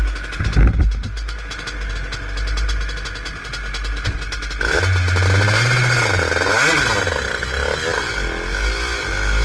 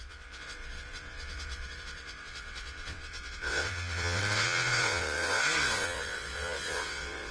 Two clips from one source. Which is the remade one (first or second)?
second